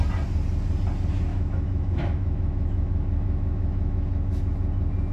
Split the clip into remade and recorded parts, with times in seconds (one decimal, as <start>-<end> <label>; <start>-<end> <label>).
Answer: 0.0-1.3 recorded; 1.3-4.4 remade; 4.4-5.1 recorded